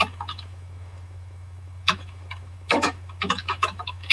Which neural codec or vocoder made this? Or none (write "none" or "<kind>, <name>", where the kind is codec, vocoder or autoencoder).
autoencoder, DAC-VAE